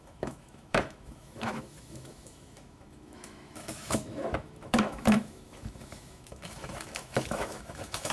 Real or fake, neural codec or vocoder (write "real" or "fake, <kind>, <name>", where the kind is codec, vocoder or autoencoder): fake, autoencoder, DAC-VAE